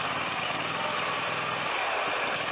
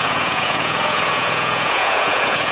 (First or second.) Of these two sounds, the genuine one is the first